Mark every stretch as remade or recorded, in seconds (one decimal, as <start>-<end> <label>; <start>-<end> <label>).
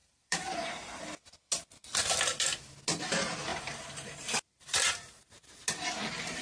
0.0-1.0 remade; 1.0-3.5 recorded; 3.5-5.1 remade; 5.1-6.4 recorded